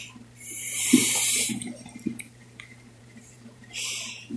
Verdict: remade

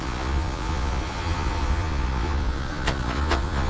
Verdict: remade